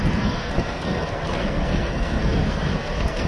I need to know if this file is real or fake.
fake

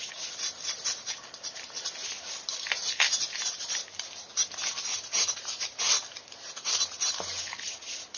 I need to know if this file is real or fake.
real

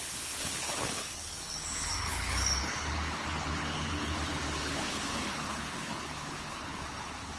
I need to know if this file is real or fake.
fake